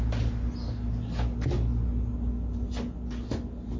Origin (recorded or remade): recorded